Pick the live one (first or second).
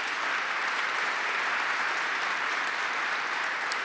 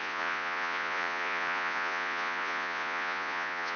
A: first